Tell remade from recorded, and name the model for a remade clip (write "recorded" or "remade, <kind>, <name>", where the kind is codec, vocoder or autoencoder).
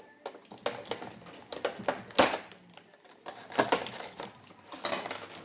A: recorded